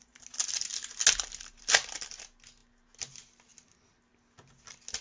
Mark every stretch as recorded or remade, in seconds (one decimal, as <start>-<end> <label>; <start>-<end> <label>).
0.0-5.0 recorded